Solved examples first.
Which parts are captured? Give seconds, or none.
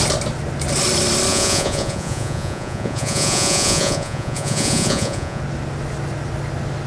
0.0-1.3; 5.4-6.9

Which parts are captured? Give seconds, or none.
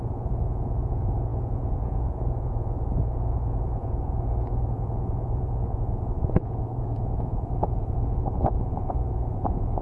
none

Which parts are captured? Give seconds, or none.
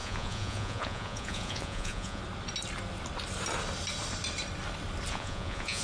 2.2-5.1